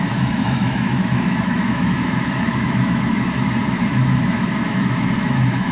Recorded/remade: remade